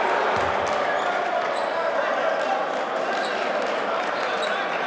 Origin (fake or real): real